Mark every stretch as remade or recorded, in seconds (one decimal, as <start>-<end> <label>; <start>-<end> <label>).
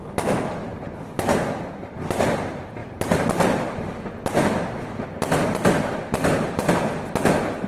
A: 0.0-2.8 recorded; 2.8-6.7 remade; 6.7-7.7 recorded